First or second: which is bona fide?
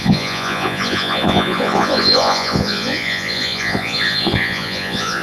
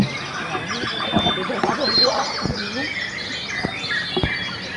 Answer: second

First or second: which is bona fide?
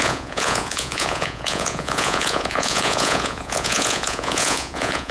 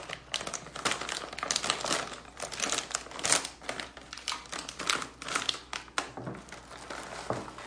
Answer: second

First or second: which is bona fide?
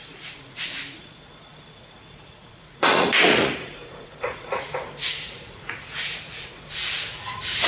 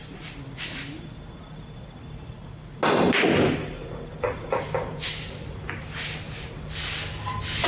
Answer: second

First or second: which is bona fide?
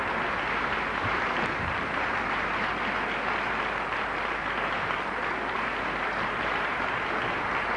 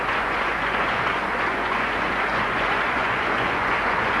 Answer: first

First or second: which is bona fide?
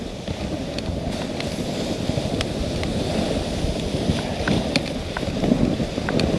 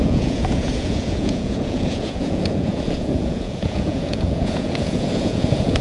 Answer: first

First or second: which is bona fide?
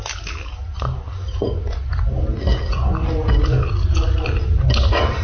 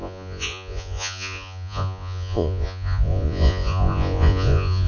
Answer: first